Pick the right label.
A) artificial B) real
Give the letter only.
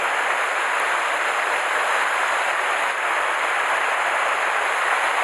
B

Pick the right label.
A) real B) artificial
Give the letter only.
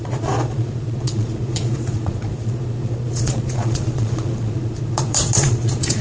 B